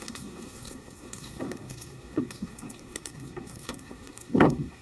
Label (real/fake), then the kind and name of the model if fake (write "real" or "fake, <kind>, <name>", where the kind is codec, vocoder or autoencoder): fake, codec, SNAC